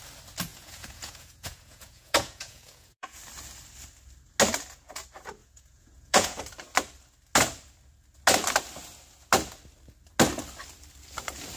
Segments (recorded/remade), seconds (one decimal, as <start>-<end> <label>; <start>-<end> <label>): 0.0-0.5 recorded; 0.5-3.2 remade; 3.2-5.4 recorded; 5.4-6.4 remade; 6.4-11.6 recorded